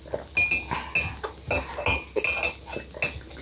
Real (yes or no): yes